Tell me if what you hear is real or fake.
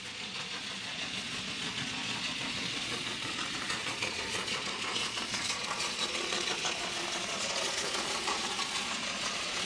fake